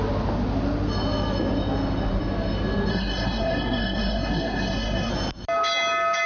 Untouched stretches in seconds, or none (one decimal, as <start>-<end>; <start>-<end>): 0.0-2.9; 5.1-6.3